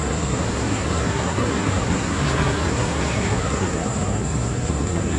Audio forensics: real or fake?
fake